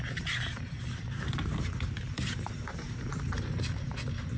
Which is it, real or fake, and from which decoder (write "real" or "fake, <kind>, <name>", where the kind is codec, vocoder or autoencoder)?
fake, vocoder, BigVGAN v2